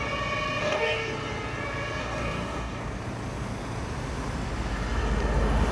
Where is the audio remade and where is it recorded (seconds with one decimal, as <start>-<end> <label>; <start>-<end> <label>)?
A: 0.0-0.6 recorded; 0.6-1.1 remade; 1.1-2.0 recorded; 2.0-2.8 remade; 2.8-5.7 recorded